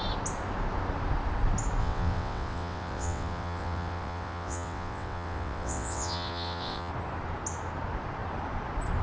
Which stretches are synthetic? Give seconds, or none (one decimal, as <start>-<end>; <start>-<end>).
1.8-6.9